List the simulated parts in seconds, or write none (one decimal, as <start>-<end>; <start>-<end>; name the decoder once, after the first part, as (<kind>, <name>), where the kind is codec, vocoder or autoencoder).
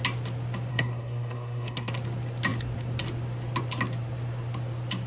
0.7-1.9 (codec, SNAC)